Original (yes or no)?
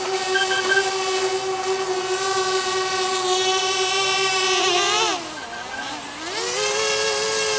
yes